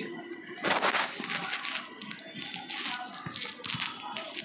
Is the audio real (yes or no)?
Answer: yes